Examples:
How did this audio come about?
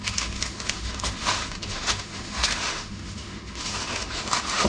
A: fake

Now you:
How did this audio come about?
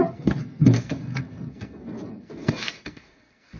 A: fake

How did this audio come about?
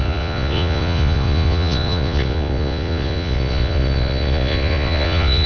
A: fake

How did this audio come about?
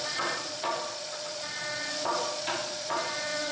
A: fake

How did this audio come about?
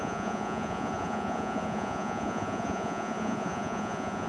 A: fake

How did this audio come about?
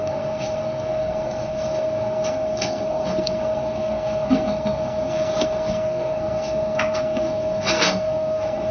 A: fake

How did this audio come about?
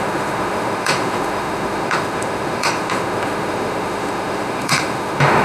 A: fake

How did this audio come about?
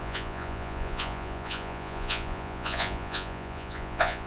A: fake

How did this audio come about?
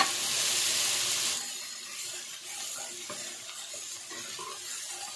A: real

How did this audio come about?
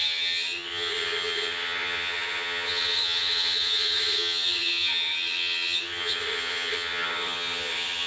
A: fake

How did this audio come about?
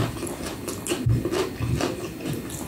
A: real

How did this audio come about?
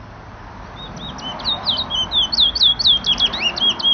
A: real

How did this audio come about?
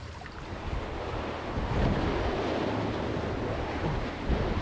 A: real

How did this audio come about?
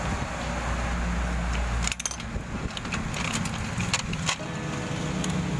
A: real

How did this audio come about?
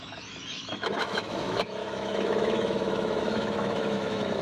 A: fake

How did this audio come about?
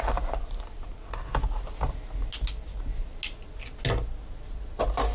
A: real